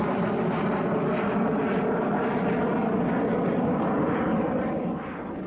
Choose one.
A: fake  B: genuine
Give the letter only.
B